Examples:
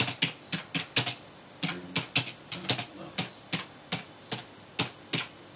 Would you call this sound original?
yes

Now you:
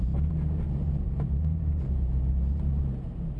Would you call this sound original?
no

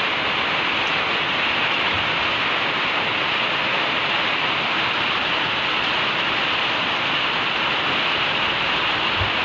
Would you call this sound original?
yes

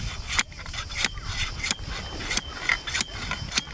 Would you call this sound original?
yes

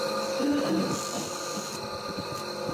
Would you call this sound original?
yes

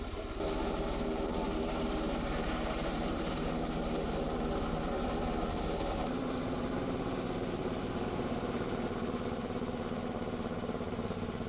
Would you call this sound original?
no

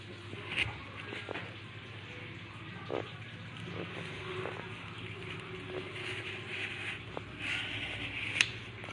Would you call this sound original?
yes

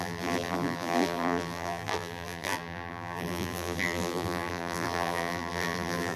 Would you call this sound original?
no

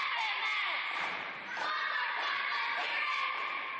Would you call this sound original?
no